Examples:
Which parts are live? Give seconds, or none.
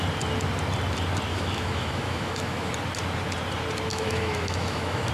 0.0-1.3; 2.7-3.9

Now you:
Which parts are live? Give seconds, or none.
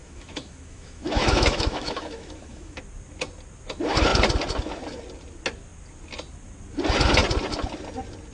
2.8-8.3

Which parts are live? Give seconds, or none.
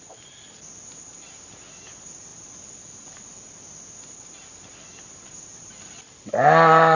0.0-7.0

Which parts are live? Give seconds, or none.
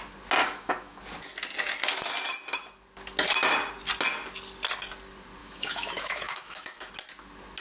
0.0-0.4; 1.0-5.4; 6.9-7.6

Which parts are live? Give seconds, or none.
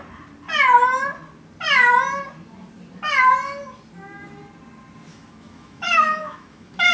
0.0-5.1